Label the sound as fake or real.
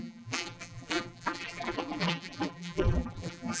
fake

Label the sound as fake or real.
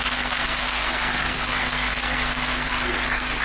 fake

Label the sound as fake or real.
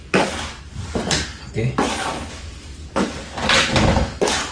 real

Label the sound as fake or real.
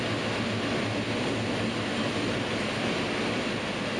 real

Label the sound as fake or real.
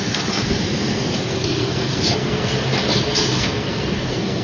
fake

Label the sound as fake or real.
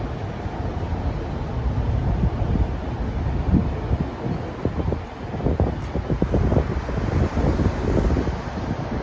real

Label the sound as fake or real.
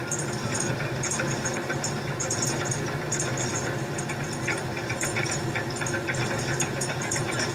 real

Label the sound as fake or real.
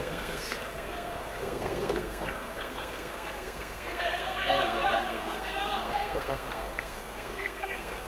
fake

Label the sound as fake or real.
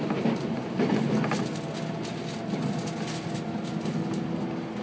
real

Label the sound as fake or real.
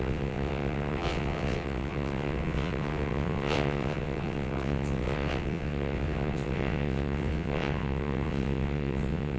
fake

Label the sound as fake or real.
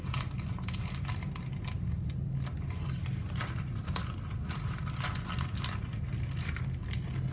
real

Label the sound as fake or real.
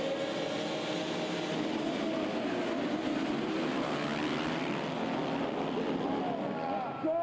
real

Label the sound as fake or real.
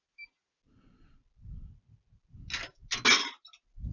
real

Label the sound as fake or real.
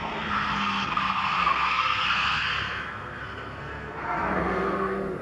fake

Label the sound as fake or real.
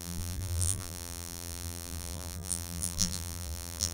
fake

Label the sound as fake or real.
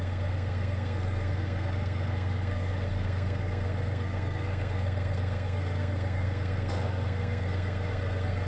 fake